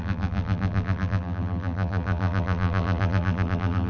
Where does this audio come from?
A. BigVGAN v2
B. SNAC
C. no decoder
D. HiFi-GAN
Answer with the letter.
A